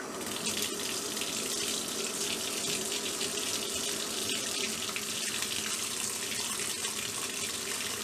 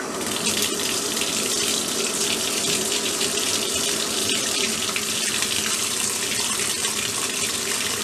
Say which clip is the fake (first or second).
second